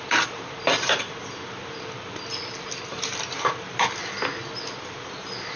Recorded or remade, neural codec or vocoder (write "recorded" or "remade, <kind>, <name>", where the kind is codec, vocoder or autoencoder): recorded